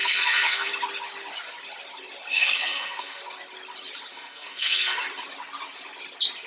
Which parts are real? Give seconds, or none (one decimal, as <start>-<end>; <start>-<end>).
0.7-2.3; 3.2-4.1; 5.0-6.5